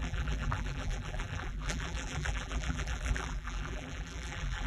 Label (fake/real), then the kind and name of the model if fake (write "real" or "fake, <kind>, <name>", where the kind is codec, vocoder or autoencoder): fake, vocoder, BigVGAN v2